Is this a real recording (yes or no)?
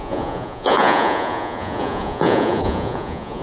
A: no